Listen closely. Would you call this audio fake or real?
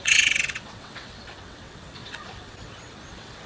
fake